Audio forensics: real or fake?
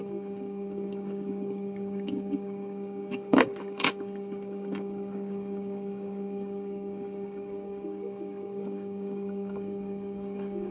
fake